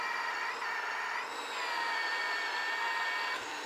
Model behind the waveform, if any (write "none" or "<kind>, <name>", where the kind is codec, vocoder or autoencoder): none